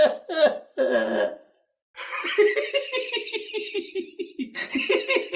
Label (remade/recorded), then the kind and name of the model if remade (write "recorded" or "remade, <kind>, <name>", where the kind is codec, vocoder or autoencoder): recorded